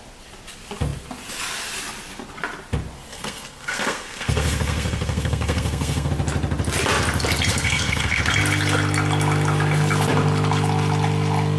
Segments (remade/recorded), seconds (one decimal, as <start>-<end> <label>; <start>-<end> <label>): 0.0-3.1 recorded; 3.1-6.1 remade; 6.1-7.5 recorded; 7.5-8.2 remade; 8.2-11.6 recorded